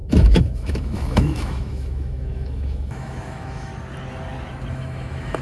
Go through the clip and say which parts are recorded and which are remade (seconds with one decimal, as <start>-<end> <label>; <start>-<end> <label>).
0.0-3.7 remade; 3.7-4.7 recorded; 4.7-5.4 remade

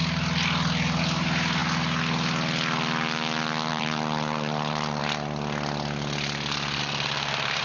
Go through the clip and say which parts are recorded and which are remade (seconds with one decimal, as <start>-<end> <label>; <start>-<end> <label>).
0.0-1.0 recorded; 1.0-1.6 remade; 1.6-3.7 recorded; 3.7-5.0 remade; 5.0-6.8 recorded; 6.8-7.6 remade

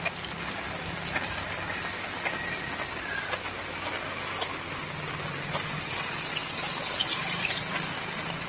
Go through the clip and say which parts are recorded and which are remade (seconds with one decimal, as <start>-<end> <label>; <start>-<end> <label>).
0.0-8.5 recorded

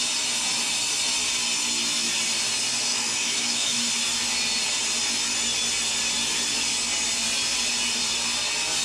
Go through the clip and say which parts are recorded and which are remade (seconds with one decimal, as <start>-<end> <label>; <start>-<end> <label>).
0.0-2.9 recorded; 2.9-3.9 remade; 3.9-8.8 recorded

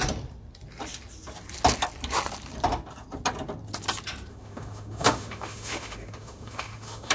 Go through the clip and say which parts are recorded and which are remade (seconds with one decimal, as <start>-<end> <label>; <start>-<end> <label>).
0.0-4.3 recorded; 4.3-7.1 remade

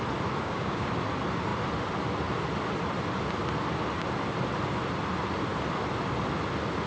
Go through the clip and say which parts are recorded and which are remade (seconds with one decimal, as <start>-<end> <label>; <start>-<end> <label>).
0.0-0.4 recorded; 0.4-0.9 remade; 0.9-6.9 recorded